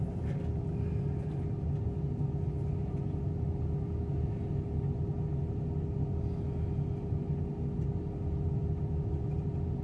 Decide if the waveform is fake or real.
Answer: real